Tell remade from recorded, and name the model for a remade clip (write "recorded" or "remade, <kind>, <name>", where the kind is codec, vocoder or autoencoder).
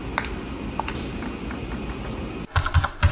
recorded